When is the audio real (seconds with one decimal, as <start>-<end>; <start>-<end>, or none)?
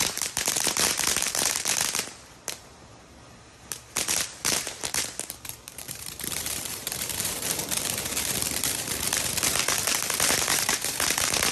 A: 7.6-8.6